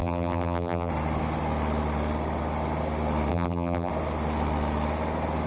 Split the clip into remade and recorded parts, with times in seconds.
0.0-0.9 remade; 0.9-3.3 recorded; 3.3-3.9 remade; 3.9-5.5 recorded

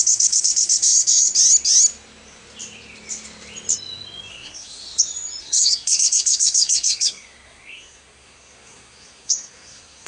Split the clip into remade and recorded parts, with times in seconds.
0.0-1.3 remade; 1.3-4.3 recorded; 4.3-4.8 remade; 4.8-5.4 recorded; 5.4-10.1 remade

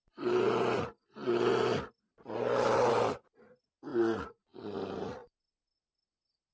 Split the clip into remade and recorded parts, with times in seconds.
0.0-3.9 recorded; 3.9-4.4 remade; 4.4-6.5 recorded

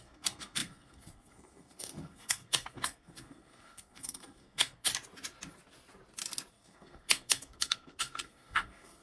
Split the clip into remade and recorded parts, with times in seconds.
0.0-4.9 remade; 4.9-6.5 recorded; 6.5-9.0 remade

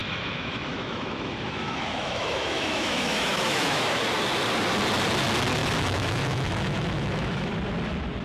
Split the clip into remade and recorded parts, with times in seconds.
0.0-4.0 remade; 4.0-5.6 recorded; 5.6-7.5 remade; 7.5-8.2 recorded

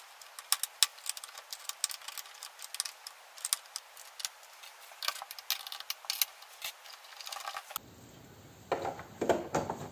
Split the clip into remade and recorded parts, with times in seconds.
0.0-9.9 recorded

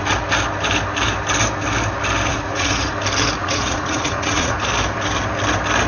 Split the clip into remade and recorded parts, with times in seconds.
0.0-2.3 recorded; 2.3-2.9 remade; 2.9-3.4 recorded; 3.4-4.6 remade; 4.6-5.9 recorded